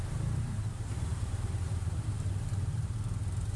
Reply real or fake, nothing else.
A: fake